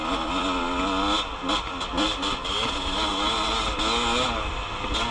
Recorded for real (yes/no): yes